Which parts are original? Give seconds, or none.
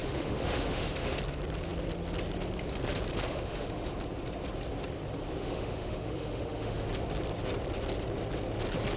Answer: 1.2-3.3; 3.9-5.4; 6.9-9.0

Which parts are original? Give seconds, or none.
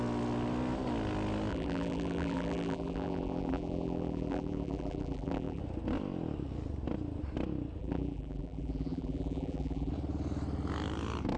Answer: 0.0-1.5; 5.6-7.8; 9.9-11.4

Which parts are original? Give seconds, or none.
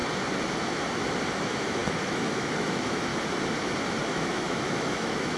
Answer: 0.0-1.3; 3.1-4.1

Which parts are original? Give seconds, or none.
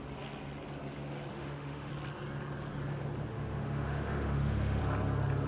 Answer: 0.0-1.3; 1.9-3.3; 4.8-5.5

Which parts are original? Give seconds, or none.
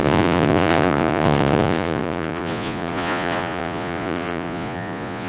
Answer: none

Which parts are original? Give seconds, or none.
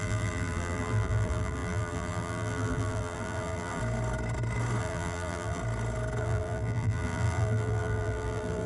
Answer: 3.8-4.8; 5.6-6.2